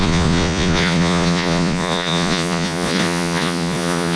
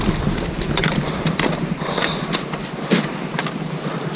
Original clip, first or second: second